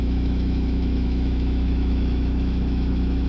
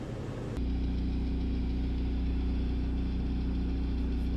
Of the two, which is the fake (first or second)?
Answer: first